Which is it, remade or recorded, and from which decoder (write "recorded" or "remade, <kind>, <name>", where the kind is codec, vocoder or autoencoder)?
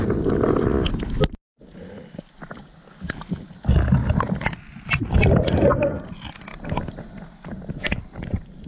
recorded